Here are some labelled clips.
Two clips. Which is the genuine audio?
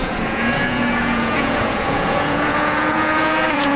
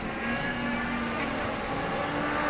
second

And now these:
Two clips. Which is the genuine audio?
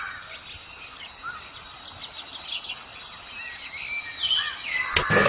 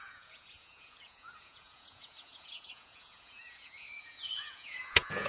first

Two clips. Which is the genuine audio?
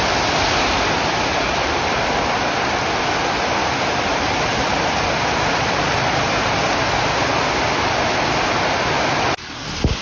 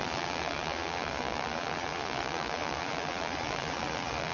first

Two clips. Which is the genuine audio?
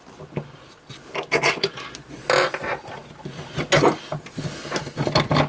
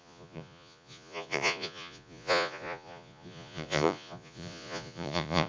first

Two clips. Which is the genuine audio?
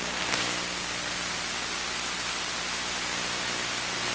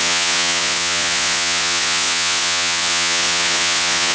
first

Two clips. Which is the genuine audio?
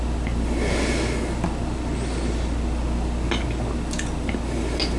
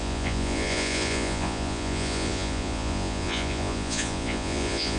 first